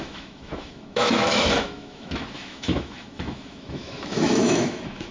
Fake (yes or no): yes